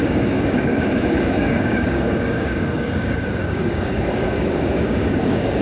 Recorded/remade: remade